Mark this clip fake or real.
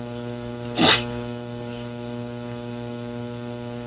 fake